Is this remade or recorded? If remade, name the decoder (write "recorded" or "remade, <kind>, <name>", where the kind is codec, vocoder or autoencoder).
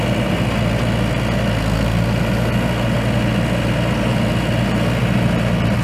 recorded